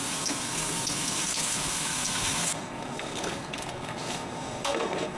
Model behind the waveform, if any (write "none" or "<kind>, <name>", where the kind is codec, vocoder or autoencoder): codec, SNAC